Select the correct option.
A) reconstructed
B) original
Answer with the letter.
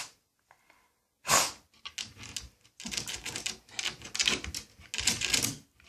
B